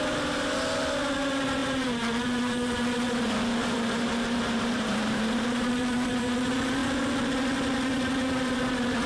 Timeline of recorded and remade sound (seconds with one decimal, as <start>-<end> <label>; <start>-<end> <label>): 0.0-3.6 recorded; 3.6-5.7 remade; 5.7-9.1 recorded